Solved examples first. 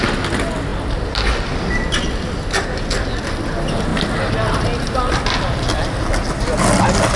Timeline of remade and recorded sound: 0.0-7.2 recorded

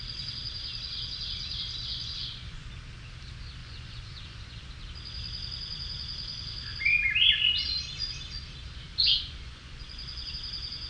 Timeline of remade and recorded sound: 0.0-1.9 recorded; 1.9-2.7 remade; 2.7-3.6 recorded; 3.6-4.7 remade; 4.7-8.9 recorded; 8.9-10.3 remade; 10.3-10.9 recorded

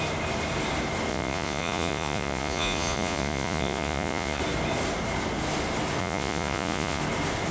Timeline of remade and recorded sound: 0.0-1.1 recorded; 1.1-4.4 remade; 4.4-6.0 recorded; 6.0-7.0 remade; 7.0-7.5 recorded